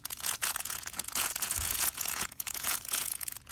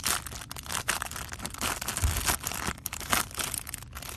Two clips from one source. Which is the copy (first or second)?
first